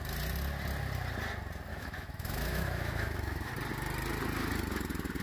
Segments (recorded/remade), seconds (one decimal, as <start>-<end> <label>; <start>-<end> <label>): 0.0-1.7 recorded; 1.7-3.5 remade; 3.5-5.2 recorded

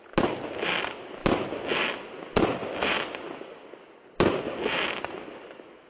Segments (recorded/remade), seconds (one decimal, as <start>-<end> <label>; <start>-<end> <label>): 0.0-5.9 recorded

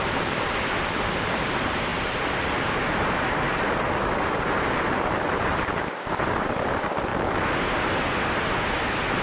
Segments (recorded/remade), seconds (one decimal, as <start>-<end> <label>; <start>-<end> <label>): 0.0-7.1 remade; 7.1-9.2 recorded

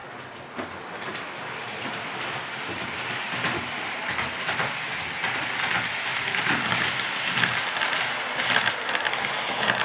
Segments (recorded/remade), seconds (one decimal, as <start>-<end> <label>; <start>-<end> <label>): 0.0-4.1 remade; 4.1-6.1 recorded; 6.1-6.8 remade; 6.8-9.8 recorded